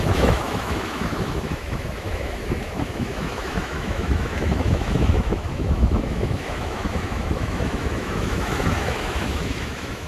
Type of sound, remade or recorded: remade